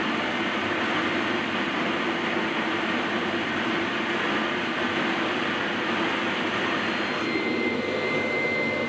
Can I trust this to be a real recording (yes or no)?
yes